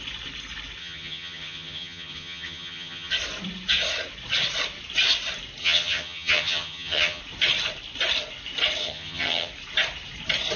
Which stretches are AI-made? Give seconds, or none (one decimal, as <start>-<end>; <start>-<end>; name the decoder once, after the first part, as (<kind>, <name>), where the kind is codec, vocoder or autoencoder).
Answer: 0.8-3.1 (vocoder, HiFi-GAN); 5.6-7.2; 8.8-9.5